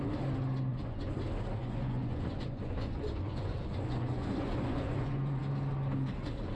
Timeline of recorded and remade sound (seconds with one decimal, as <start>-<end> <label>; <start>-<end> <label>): 0.0-0.7 recorded; 0.7-1.2 remade; 1.2-1.6 recorded; 1.6-5.4 remade; 5.4-6.6 recorded